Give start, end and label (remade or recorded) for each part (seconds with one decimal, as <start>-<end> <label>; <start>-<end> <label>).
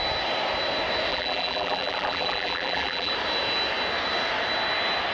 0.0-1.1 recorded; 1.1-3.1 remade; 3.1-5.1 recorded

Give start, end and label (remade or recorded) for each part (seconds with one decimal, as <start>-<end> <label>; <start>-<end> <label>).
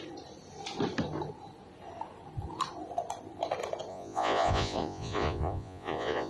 0.0-3.9 recorded; 3.9-6.3 remade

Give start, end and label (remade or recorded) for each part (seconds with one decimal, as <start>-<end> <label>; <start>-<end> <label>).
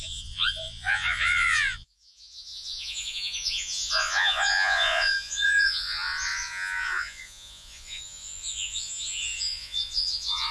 0.0-10.5 remade